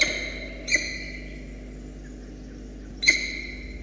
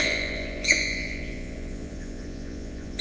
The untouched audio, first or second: first